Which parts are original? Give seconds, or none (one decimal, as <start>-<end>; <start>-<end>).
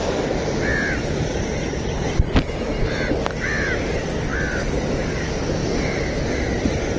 2.1-7.0